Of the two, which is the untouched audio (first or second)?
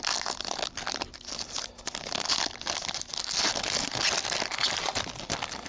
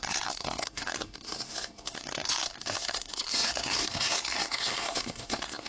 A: first